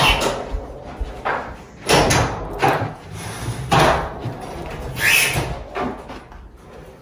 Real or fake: real